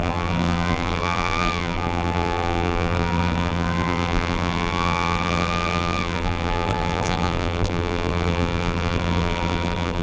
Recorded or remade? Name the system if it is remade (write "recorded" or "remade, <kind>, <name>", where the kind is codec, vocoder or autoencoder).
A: remade, vocoder, BigVGAN v2